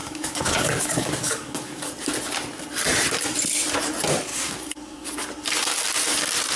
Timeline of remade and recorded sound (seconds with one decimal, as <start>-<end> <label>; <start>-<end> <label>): 0.0-1.9 remade; 1.9-4.3 recorded; 4.3-5.3 remade; 5.3-6.6 recorded